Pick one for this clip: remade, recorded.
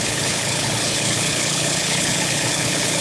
remade